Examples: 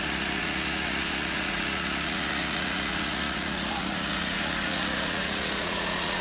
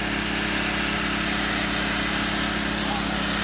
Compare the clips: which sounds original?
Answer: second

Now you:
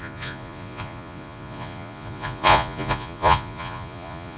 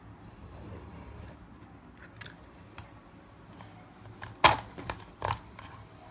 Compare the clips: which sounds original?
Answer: second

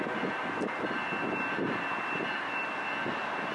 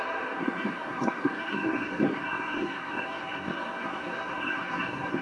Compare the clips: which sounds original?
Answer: first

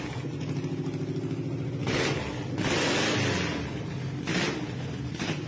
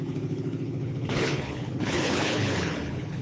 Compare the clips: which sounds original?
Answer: first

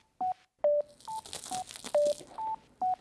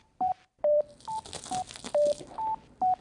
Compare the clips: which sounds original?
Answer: first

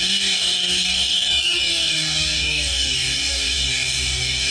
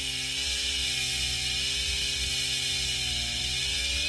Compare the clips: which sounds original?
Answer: second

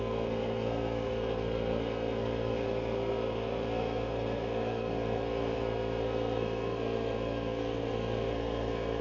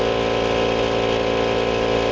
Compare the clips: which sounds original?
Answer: second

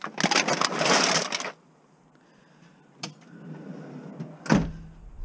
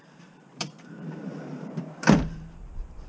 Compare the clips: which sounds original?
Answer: first